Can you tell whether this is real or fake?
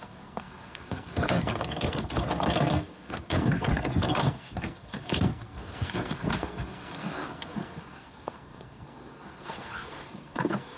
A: fake